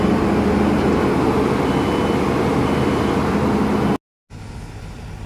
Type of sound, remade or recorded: recorded